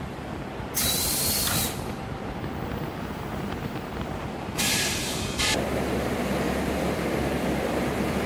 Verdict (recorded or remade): remade